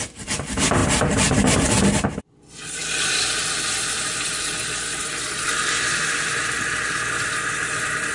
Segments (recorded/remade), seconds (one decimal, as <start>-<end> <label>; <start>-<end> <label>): 0.0-8.1 recorded